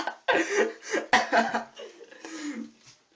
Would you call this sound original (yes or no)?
yes